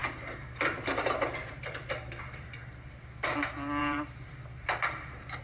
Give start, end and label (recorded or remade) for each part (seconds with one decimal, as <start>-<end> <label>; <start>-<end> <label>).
0.0-3.0 remade; 3.0-3.8 recorded; 3.8-5.4 remade